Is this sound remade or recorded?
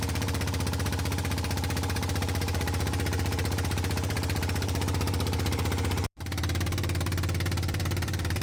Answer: remade